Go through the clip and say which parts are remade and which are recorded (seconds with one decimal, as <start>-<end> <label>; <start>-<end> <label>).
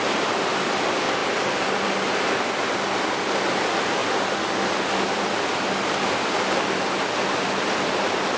0.0-8.4 recorded